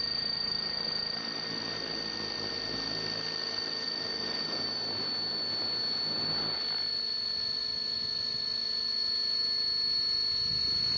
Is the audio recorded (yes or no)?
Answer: yes